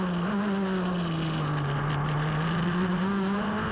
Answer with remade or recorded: recorded